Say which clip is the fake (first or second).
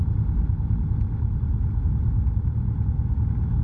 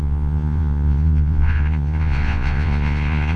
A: second